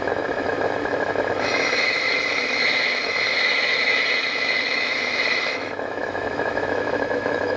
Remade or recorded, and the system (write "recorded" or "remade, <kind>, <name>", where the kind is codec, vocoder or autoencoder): remade, autoencoder, DAC-VAE